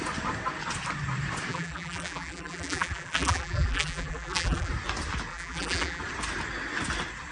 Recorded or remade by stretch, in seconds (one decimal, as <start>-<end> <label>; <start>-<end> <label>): 0.0-1.5 recorded; 1.5-4.7 remade; 4.7-5.3 recorded; 5.3-6.0 remade; 6.0-7.3 recorded